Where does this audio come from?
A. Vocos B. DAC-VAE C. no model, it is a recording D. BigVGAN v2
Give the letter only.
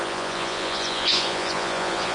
A